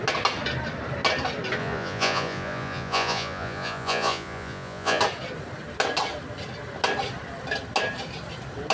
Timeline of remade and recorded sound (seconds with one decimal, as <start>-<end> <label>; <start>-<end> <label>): 0.0-1.6 recorded; 1.6-5.0 remade; 5.0-8.7 recorded